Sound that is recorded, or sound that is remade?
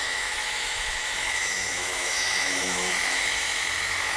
remade